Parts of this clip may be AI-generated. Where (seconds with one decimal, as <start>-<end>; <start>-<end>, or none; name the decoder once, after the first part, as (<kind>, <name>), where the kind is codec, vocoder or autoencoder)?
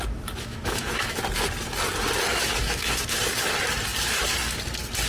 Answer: 0.5-1.2 (autoencoder, DAC-VAE); 2.3-3.2